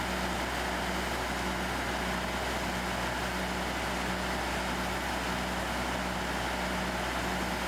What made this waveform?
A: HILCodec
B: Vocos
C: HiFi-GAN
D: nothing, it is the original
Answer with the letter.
D